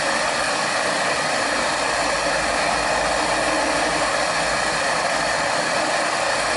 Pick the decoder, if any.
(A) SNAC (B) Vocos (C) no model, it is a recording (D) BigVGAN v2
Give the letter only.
C